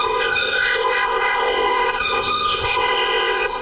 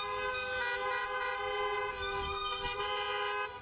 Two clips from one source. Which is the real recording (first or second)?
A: second